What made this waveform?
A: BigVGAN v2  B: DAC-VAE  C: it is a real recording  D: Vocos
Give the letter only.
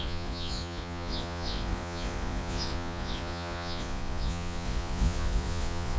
D